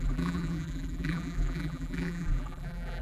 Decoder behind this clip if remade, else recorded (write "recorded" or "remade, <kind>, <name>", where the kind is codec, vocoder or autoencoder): remade, vocoder, BigVGAN v2